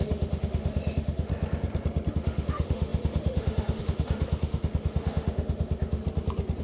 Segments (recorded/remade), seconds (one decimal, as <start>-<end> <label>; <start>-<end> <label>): 0.0-1.3 remade; 1.3-2.1 recorded; 2.1-6.0 remade; 6.0-6.6 recorded